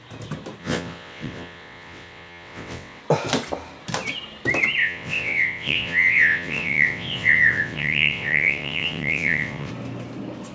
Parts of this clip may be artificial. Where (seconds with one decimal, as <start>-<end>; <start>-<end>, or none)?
0.6-3.0; 4.8-9.7